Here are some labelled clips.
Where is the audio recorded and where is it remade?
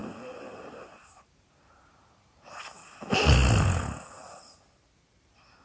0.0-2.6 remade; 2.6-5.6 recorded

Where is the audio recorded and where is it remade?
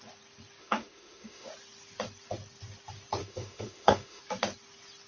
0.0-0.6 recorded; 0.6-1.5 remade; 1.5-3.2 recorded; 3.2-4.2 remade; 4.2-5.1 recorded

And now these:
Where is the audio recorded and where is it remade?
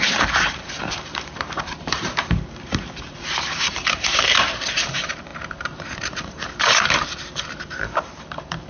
0.0-8.7 remade